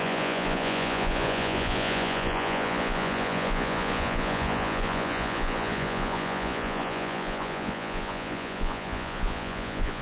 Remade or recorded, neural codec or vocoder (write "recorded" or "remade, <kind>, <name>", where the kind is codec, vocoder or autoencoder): remade, vocoder, Vocos